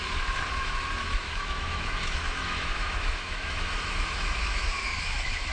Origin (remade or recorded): remade